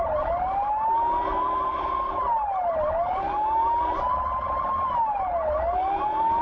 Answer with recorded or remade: recorded